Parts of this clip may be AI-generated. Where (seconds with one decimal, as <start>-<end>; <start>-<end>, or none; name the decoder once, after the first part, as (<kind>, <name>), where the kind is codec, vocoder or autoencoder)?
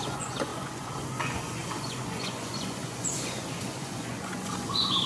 0.0-5.1 (vocoder, Vocos)